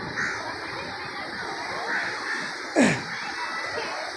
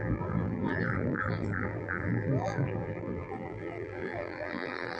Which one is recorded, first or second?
first